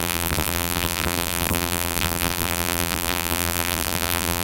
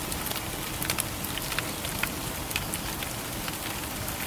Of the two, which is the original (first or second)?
second